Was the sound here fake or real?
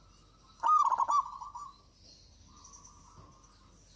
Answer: real